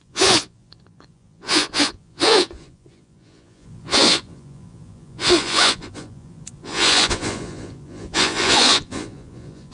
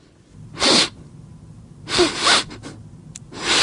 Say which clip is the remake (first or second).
first